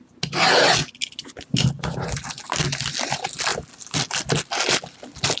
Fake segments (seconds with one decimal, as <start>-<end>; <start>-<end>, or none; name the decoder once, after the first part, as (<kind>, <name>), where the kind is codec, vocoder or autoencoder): none